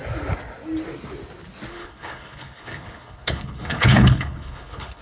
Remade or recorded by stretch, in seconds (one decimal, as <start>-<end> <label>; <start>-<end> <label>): 0.0-1.7 recorded; 1.7-5.0 remade